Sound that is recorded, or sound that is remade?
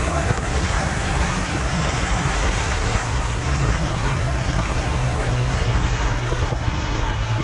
remade